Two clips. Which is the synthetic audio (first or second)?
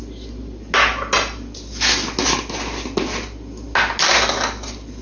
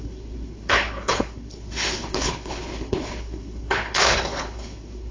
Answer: second